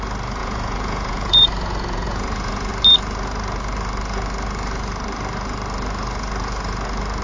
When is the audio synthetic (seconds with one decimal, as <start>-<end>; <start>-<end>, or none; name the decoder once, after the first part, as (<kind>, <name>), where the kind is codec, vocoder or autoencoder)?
0.4-2.7 (vocoder, Vocos)